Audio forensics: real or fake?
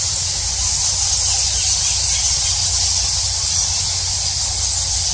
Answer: real